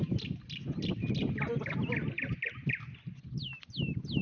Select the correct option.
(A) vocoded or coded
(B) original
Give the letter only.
B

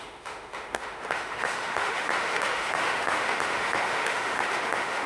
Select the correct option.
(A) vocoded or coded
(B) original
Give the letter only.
A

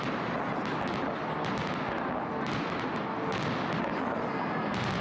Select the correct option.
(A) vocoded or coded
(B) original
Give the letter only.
B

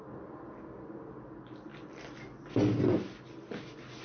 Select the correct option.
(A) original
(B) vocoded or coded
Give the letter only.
A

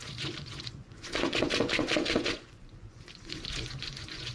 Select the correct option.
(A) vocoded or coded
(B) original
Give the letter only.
A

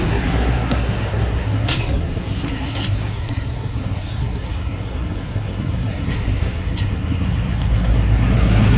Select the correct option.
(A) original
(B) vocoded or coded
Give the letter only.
B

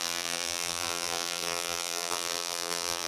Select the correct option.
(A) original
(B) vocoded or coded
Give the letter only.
B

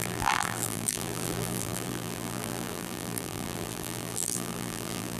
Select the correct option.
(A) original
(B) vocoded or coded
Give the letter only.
B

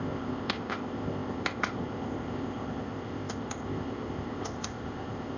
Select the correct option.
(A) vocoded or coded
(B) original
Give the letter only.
A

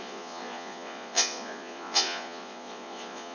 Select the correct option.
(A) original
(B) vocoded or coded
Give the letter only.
B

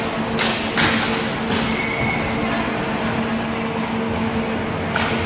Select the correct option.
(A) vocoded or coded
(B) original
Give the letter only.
B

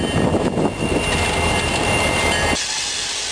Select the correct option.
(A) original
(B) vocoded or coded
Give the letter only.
A